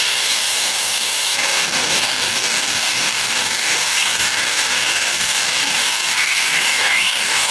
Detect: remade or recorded remade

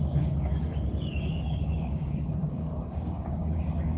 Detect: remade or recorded remade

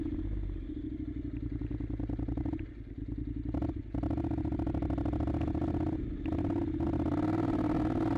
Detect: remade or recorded recorded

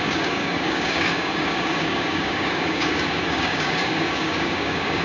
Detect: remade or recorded remade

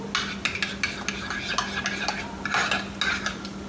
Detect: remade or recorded recorded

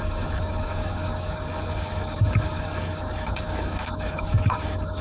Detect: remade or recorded remade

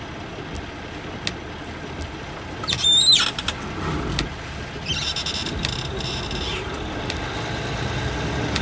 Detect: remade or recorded recorded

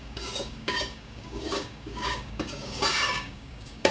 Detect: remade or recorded remade